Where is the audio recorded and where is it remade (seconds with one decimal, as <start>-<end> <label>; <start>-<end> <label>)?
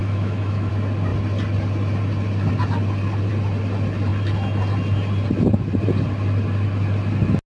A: 0.0-0.7 remade; 0.7-7.5 recorded